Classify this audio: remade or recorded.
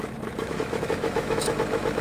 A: remade